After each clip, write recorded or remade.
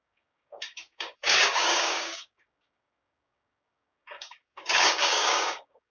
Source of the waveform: remade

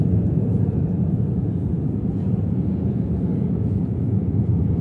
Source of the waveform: remade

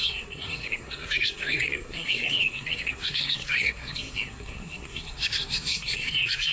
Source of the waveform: remade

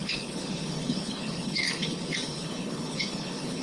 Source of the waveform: remade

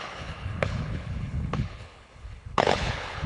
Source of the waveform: remade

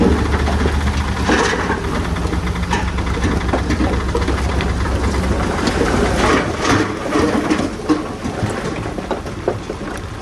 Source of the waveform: recorded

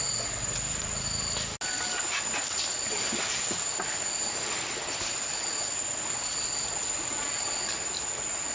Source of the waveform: recorded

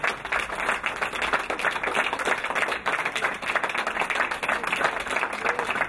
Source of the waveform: recorded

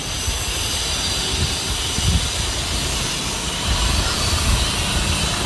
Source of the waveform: recorded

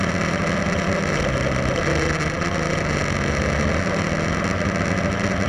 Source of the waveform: recorded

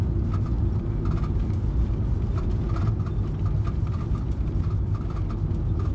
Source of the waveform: recorded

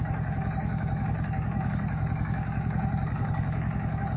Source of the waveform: remade